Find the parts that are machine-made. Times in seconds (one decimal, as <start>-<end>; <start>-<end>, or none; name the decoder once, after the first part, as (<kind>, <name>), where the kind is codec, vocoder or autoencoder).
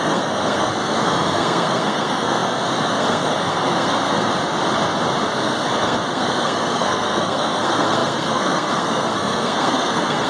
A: 0.0-4.3 (codec, SNAC); 5.3-10.3